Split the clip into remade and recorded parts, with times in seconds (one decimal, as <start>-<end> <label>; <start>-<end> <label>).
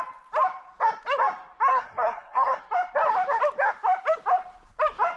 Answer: 0.0-1.7 recorded; 1.7-2.6 remade; 2.6-5.2 recorded